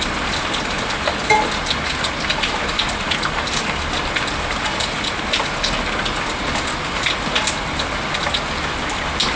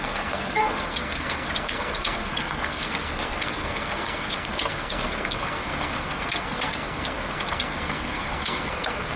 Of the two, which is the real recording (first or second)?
first